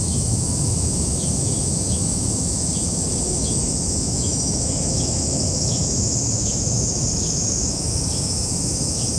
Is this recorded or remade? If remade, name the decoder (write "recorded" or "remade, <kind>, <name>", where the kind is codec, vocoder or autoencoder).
remade, autoencoder, DAC-VAE